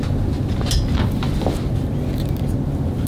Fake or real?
real